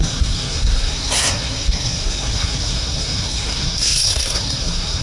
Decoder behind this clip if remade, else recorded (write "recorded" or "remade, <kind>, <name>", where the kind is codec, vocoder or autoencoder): remade, codec, SNAC